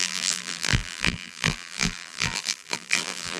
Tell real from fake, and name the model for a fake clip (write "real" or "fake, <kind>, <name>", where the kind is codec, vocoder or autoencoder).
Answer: fake, vocoder, BigVGAN v2